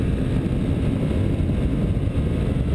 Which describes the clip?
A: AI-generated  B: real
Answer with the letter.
B